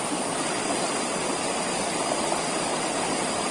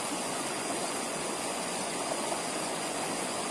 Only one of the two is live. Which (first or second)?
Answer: first